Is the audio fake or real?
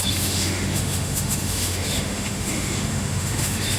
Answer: fake